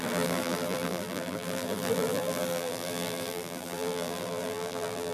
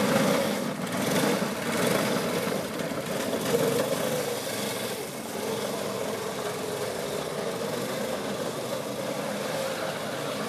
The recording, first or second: second